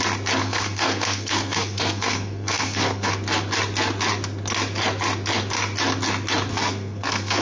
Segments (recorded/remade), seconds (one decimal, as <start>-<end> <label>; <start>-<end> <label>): 0.0-0.4 recorded; 0.4-3.1 remade; 3.1-6.5 recorded; 6.5-7.4 remade